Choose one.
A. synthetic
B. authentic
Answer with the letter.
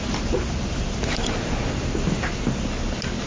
B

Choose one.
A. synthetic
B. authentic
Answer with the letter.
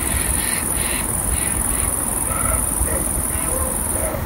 B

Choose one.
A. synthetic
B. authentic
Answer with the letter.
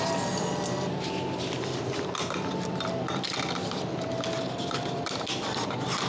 A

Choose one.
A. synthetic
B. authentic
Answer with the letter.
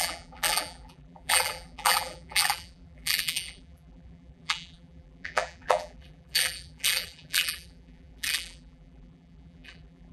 A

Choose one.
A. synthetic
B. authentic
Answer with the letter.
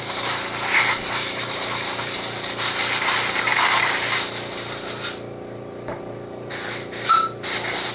A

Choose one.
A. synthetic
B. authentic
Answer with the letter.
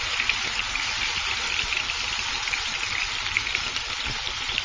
B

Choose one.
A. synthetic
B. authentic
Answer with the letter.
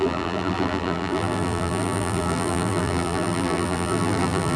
A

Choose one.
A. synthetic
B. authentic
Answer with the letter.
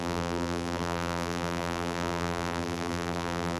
A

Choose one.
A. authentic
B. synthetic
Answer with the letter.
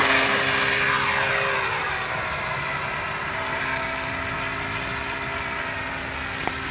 A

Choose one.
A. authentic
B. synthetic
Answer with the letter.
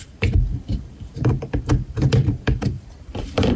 B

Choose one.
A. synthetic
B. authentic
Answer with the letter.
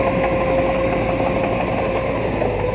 B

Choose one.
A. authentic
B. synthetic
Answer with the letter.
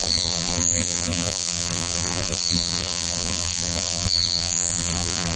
B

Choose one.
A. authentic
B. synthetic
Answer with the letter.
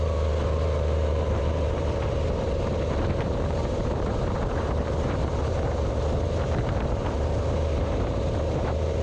B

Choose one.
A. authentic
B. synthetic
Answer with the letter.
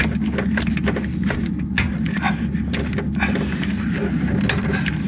A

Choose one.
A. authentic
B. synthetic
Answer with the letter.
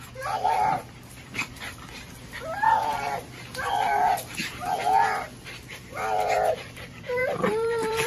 B